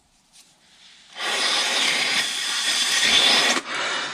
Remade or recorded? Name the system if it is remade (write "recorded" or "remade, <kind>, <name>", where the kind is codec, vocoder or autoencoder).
remade, vocoder, BigVGAN v2